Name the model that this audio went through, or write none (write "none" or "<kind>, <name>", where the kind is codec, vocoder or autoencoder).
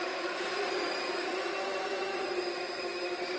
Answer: vocoder, BigVGAN v2